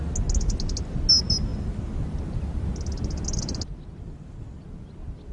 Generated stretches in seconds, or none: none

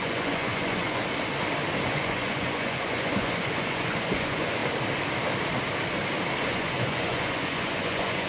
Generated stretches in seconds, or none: 0.0-1.0 (vocoder, Vocos); 1.9-4.6; 6.4-8.3

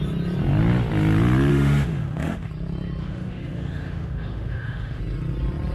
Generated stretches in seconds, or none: 1.5-2.5 (autoencoder, DAC-VAE); 3.0-5.0

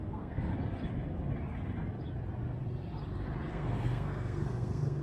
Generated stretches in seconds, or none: 0.0-0.5 (codec, SNAC); 3.5-5.0

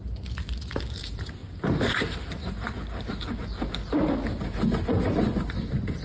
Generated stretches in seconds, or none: 0.0-3.8 (vocoder, BigVGAN v2)

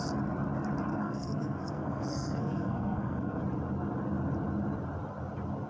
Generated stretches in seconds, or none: 0.9-3.4 (codec, SNAC)